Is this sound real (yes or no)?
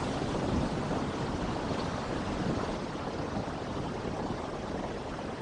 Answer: yes